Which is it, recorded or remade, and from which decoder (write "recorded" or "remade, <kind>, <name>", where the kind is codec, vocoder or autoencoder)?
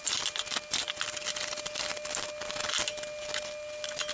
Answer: recorded